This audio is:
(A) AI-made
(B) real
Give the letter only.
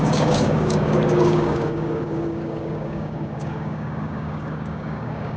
A